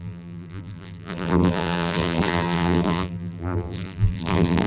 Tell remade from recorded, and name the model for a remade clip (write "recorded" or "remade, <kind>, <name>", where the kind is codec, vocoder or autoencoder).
remade, vocoder, BigVGAN v2